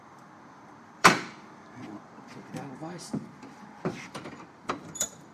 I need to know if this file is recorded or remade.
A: remade